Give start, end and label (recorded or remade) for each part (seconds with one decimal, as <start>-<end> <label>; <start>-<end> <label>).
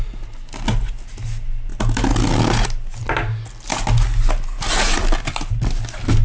0.0-6.2 recorded